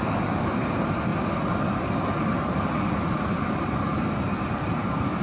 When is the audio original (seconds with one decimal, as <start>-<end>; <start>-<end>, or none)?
0.0-5.2